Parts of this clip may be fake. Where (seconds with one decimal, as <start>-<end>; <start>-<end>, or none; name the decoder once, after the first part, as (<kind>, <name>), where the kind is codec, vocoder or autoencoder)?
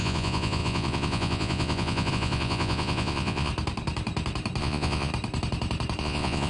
0.0-3.5 (vocoder, Vocos); 4.6-5.1; 6.0-6.5